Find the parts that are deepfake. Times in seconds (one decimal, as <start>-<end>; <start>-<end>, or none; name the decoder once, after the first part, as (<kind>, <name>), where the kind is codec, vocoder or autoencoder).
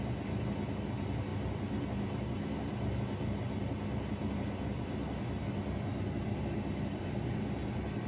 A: none